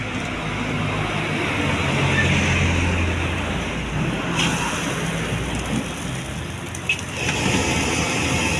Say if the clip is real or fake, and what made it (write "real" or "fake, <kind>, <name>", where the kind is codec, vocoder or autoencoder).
real